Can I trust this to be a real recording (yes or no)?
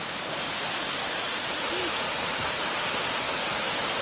yes